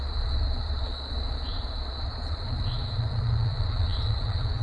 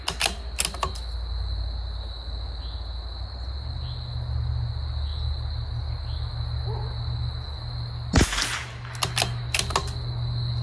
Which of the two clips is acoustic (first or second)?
second